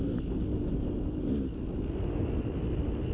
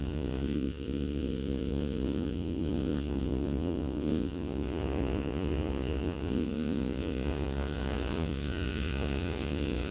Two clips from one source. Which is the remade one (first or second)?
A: second